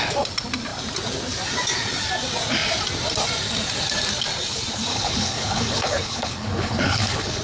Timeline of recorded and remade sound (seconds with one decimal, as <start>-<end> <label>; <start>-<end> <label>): 0.0-4.9 recorded; 4.9-7.4 remade